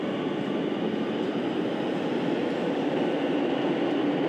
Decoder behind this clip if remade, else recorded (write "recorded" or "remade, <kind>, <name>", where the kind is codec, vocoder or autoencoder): recorded